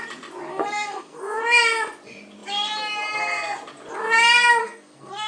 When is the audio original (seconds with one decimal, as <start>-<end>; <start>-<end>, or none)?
0.0-0.5; 1.4-4.6